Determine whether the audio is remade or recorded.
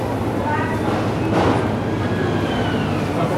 recorded